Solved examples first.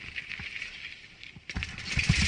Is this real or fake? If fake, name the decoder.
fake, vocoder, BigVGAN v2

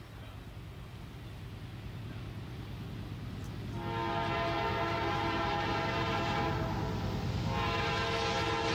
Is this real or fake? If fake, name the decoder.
real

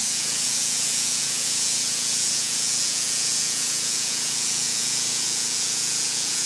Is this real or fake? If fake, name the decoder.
fake, vocoder, Vocos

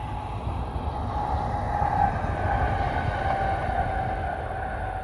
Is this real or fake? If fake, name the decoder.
real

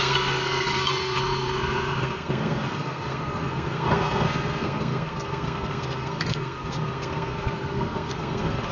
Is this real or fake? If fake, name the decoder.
fake, codec, SNAC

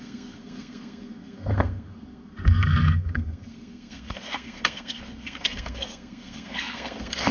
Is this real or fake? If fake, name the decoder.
fake, codec, SNAC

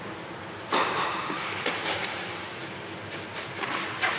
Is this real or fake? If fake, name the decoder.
real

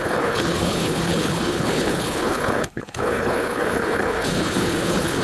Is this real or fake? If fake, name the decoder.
fake, codec, HILCodec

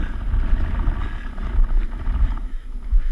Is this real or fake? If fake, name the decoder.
real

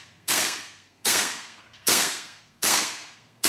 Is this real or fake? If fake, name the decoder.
fake, codec, SNAC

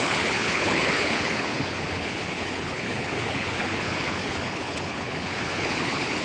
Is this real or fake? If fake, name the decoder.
fake, codec, HILCodec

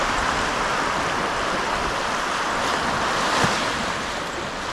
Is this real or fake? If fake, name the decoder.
real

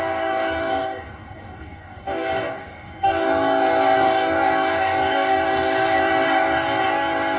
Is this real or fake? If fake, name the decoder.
fake, codec, DAC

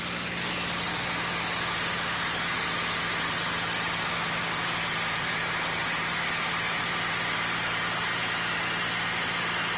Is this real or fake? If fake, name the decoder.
real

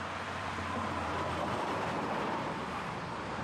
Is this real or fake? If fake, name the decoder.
fake, vocoder, BigVGAN v2